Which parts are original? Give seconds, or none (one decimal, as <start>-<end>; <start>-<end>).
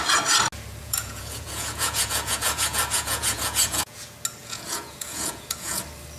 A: 0.0-0.8; 4.0-4.4; 5.8-6.2